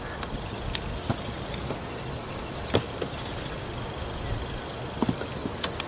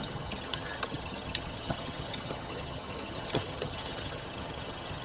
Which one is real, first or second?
first